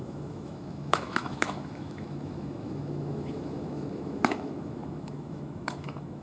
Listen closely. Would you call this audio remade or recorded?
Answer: remade